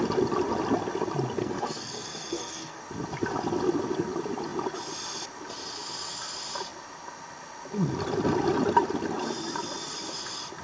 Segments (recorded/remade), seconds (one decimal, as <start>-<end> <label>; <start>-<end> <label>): 0.0-1.4 recorded; 1.4-2.8 remade; 2.8-10.6 recorded